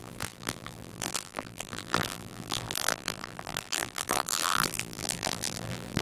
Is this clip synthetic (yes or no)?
yes